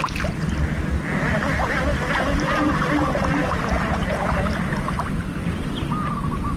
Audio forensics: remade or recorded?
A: recorded